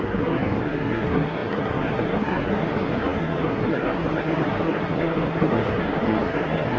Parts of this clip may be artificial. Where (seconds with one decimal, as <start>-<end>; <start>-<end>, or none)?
0.0-6.8